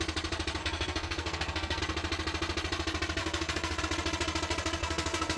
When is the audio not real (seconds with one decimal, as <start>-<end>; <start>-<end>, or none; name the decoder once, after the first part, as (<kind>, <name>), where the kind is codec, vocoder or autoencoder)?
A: 0.6-1.8 (codec, SNAC); 3.2-3.8; 4.8-5.4